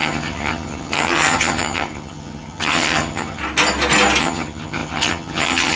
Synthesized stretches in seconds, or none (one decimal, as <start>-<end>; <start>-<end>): 0.0-3.4; 4.2-5.8